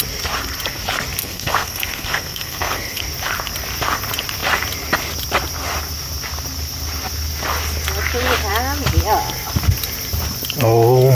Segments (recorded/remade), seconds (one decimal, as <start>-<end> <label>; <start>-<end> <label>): 0.0-1.2 recorded; 1.2-3.0 remade; 3.0-11.1 recorded